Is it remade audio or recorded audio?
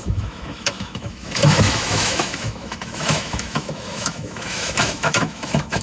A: remade